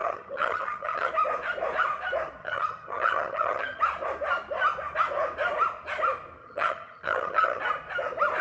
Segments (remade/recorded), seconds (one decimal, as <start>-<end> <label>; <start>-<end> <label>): 0.0-1.1 remade; 1.1-2.4 recorded; 2.4-3.8 remade; 3.8-6.4 recorded; 6.4-7.6 remade; 7.6-8.4 recorded